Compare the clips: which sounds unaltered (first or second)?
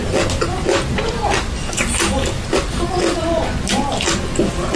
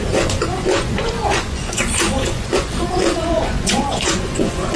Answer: first